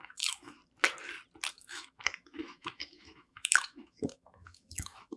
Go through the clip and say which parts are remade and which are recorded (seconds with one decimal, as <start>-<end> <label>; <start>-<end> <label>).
0.0-0.6 remade; 0.6-1.5 recorded; 1.5-5.2 remade